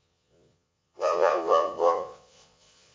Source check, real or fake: fake